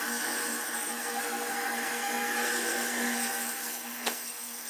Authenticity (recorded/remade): remade